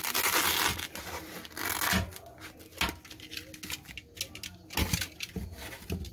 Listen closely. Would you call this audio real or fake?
real